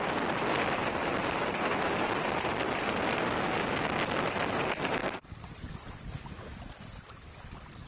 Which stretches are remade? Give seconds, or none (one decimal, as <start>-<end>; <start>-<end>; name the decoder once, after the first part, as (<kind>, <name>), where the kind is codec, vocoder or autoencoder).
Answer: 5.0-5.7 (vocoder, BigVGAN v2)